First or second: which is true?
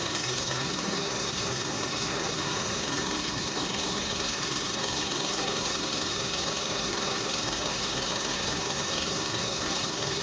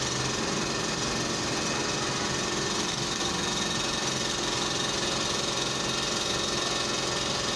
second